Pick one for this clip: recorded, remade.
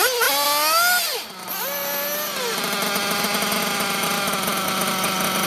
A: recorded